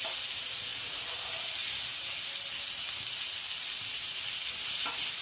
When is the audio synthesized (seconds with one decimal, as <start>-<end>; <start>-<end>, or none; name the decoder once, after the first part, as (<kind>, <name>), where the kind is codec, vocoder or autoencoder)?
none